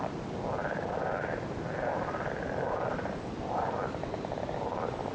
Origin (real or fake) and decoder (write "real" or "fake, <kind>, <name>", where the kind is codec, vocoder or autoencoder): real